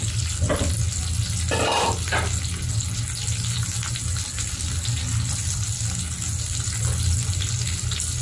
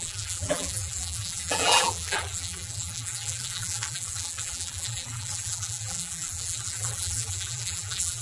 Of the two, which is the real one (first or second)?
first